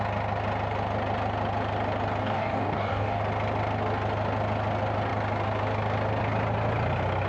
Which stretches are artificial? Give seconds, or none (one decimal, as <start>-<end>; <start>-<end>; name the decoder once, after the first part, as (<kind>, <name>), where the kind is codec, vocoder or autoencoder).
2.2-3.2 (codec, DAC)